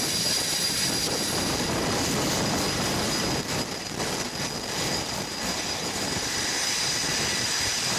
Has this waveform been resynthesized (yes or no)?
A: no